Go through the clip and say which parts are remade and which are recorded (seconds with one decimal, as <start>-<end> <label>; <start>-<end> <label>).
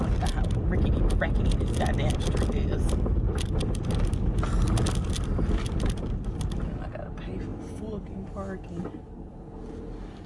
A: 0.0-10.3 recorded